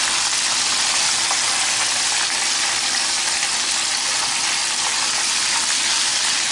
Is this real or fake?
real